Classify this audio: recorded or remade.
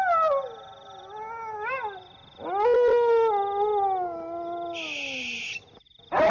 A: recorded